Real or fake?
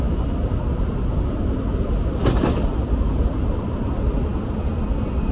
real